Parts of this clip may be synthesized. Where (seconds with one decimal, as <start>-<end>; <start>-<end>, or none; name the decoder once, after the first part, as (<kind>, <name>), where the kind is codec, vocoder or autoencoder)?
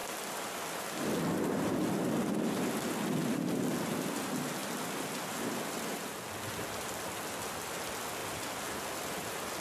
none